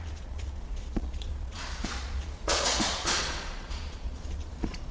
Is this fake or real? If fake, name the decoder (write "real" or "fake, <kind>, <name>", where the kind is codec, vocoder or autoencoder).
fake, vocoder, Vocos